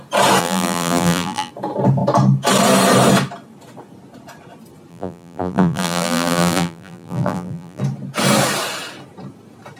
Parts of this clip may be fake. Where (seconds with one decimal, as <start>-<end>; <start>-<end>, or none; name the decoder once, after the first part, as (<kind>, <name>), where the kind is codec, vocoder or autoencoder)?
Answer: 0.4-1.5 (vocoder, BigVGAN v2); 4.9-7.8